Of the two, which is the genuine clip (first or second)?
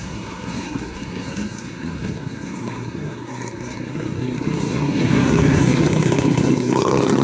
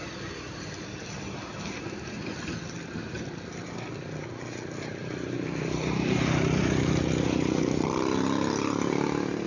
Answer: second